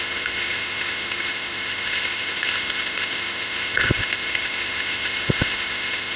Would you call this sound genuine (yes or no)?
no